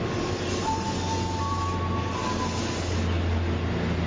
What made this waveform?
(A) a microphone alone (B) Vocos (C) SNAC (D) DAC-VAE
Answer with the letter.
A